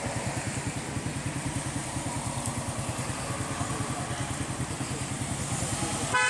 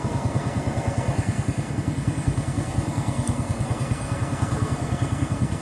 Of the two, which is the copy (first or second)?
second